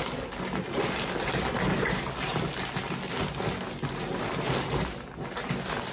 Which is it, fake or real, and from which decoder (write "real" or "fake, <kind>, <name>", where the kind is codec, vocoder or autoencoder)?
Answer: real